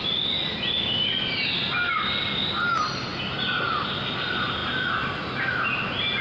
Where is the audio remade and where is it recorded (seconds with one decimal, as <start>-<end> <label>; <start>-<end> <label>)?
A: 0.0-6.2 recorded